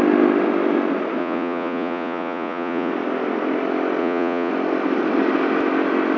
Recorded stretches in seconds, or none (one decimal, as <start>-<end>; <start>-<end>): 0.0-1.2; 2.9-4.0; 4.5-6.2